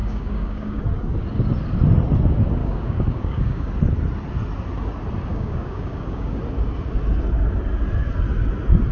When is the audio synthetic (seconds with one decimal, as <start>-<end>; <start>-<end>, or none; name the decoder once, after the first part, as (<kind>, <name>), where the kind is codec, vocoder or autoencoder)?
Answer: 0.0-0.8 (codec, DAC); 2.6-3.7; 5.3-6.4